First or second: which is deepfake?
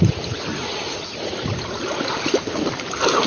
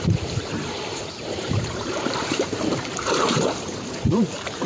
second